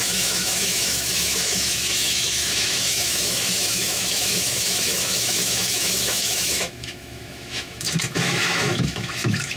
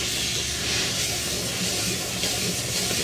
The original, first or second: second